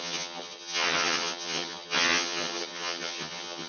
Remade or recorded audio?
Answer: remade